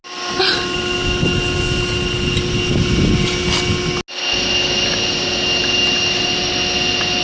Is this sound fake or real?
real